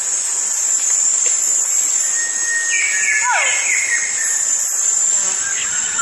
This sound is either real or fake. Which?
real